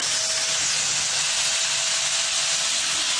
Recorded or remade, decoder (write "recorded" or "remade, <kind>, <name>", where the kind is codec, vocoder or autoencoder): recorded